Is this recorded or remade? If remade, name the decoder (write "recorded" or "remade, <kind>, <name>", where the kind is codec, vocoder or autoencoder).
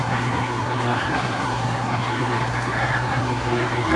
remade, codec, SNAC